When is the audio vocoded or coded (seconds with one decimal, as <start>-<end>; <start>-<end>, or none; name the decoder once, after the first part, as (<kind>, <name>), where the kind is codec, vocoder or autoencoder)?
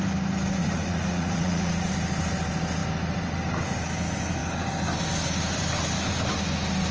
0.6-1.9 (vocoder, Vocos)